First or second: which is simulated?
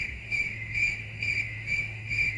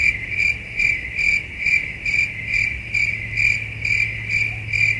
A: first